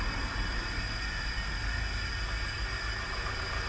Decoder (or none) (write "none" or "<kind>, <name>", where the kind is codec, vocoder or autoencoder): none